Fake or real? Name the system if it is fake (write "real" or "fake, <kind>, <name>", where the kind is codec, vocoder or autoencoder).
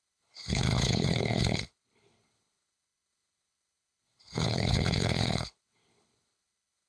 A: fake, codec, HILCodec